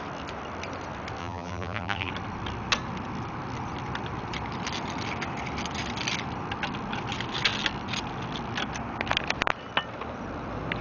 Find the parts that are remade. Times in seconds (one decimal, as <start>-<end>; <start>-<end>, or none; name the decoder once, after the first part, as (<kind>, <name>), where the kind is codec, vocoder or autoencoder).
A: 1.2-2.1 (vocoder, BigVGAN v2)